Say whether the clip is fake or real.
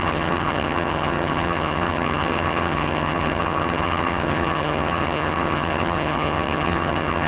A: fake